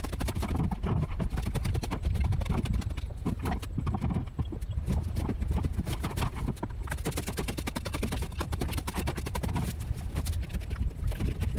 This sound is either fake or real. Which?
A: real